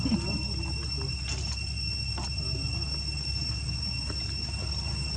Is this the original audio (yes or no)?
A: yes